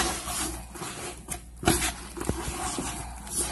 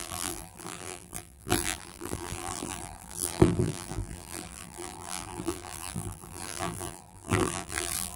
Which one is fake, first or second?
second